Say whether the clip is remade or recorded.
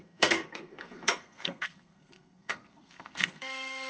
remade